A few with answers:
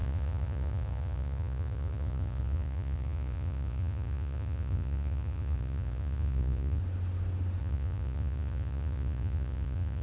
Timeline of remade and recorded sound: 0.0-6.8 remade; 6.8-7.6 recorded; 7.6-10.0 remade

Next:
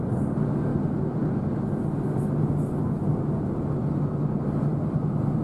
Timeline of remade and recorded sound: 0.0-4.7 recorded; 4.7-5.4 remade

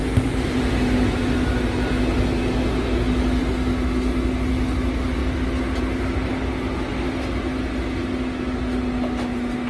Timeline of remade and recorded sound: 0.0-9.7 recorded

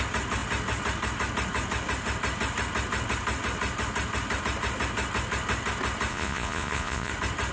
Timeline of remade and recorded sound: 0.0-6.1 recorded; 6.1-7.1 remade; 7.1-7.5 recorded

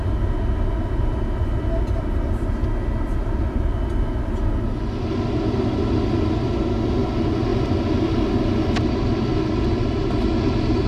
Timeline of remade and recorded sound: 0.0-10.9 recorded

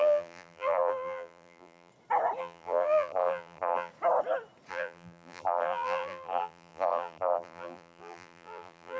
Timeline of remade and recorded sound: 0.0-1.9 remade; 1.9-2.4 recorded; 2.4-3.9 remade; 3.9-4.7 recorded; 4.7-9.0 remade

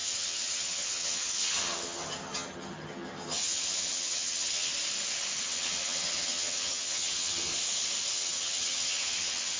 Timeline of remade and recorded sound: 0.0-4.7 remade; 4.7-5.4 recorded; 5.4-7.5 remade; 7.5-8.1 recorded; 8.1-9.6 remade